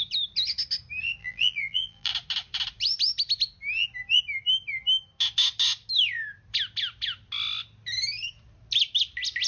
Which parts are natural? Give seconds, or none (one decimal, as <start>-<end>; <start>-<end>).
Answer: 0.0-1.2; 2.1-9.5